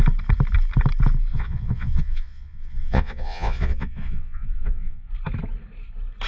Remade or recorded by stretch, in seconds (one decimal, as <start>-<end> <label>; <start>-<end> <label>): 0.0-1.3 recorded; 1.3-5.1 remade; 5.1-6.3 recorded